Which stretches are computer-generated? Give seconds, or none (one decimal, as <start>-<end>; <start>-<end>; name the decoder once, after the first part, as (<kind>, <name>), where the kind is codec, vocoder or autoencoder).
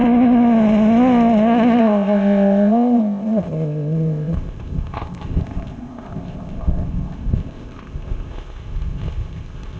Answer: 1.8-9.8 (codec, ZipCodec)